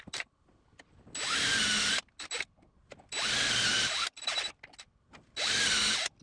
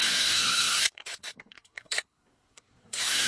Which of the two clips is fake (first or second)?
second